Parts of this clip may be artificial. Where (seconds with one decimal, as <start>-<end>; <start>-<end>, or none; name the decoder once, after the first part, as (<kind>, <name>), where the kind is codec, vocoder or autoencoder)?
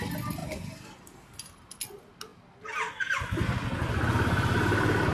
none